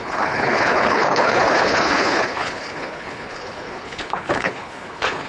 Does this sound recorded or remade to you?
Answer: remade